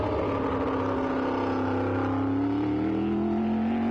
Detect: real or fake real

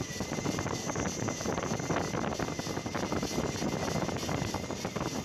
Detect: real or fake real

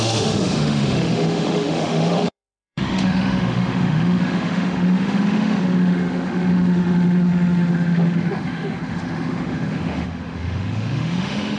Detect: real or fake fake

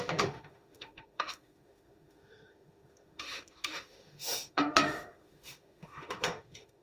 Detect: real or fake fake